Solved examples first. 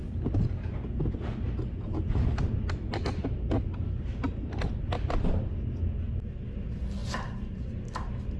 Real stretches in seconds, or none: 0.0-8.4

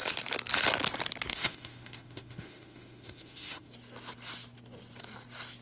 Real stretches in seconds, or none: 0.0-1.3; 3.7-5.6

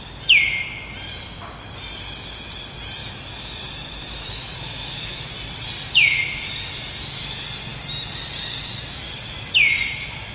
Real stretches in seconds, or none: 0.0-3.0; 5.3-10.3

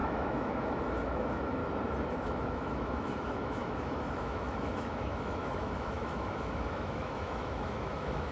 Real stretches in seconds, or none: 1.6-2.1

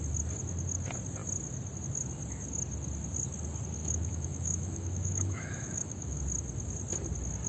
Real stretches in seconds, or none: 0.0-3.8; 6.2-7.5

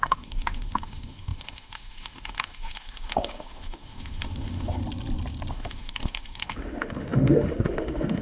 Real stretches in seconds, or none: 4.8-5.5